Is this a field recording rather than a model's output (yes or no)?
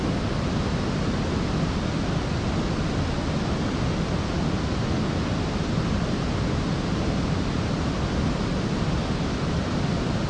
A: yes